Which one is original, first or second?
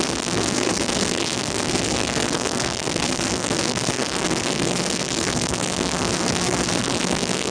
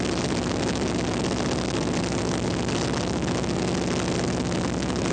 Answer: second